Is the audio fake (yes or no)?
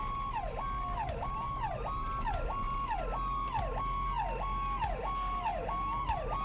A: no